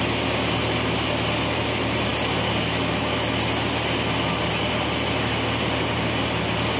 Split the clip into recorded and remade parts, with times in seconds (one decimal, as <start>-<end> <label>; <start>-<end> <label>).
0.0-6.8 recorded

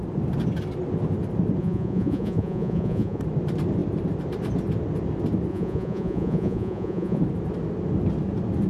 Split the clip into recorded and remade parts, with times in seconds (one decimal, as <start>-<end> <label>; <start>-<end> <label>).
0.0-1.6 recorded; 1.6-3.2 remade; 3.2-5.5 recorded; 5.5-7.2 remade; 7.2-8.7 recorded